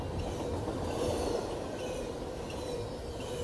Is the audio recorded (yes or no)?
yes